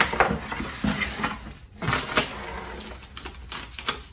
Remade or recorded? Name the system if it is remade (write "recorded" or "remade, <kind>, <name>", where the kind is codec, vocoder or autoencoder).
recorded